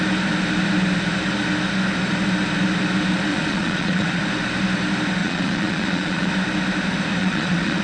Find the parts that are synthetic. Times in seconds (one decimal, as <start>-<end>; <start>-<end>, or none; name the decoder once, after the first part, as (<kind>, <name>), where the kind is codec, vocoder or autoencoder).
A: 3.3-4.2 (vocoder, Vocos); 5.2-6.3; 7.2-7.8